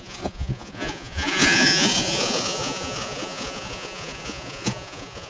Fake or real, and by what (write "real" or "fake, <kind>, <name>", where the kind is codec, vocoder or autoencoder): fake, vocoder, Vocos